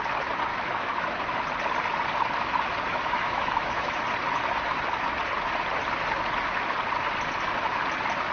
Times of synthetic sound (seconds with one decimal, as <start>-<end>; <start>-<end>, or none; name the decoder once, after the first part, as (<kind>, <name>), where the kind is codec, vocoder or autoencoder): 0.5-1.4 (autoencoder, DAC-VAE); 2.9-4.0

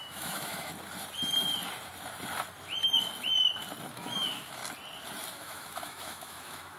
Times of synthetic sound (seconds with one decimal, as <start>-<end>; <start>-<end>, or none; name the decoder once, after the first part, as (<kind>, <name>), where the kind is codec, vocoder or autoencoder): 0.0-0.7 (autoencoder, DAC-VAE); 3.9-4.6; 5.3-6.8

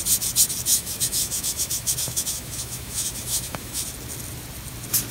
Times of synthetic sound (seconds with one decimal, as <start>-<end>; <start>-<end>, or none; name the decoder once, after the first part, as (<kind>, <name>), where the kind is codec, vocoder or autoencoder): 0.7-3.8 (autoencoder, DAC-VAE)

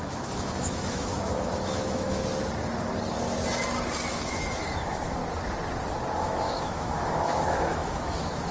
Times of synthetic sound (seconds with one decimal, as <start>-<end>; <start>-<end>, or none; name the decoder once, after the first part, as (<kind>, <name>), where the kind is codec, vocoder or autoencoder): 0.0-2.2 (autoencoder, DAC-VAE); 4.1-5.2; 6.2-8.5

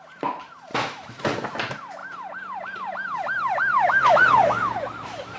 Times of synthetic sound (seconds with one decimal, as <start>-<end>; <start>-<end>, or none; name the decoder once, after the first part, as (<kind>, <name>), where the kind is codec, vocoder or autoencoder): 0.7-1.2 (autoencoder, DAC-VAE)

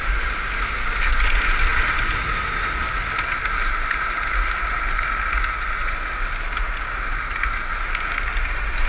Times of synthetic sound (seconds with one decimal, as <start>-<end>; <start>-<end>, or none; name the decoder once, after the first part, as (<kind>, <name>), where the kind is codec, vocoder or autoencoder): none

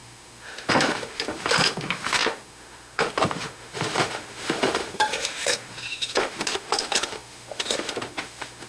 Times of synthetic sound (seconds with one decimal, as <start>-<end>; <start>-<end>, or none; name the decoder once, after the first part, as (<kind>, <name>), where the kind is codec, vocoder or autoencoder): 0.0-8.7 (autoencoder, DAC-VAE)

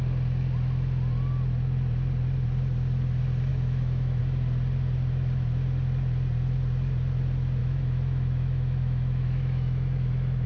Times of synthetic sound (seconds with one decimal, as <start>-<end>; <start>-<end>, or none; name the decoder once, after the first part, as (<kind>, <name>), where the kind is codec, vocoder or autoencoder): 3.5-4.2 (autoencoder, DAC-VAE); 7.6-10.5